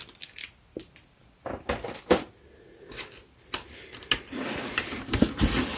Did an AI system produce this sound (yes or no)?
no